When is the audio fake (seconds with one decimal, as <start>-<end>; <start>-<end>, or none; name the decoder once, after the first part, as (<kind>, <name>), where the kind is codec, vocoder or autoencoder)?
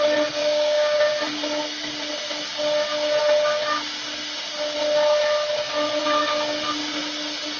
0.4-1.1 (codec, DAC)